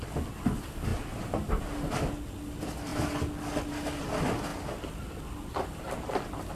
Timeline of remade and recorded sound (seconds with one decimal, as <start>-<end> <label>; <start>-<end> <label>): 0.0-6.5 recorded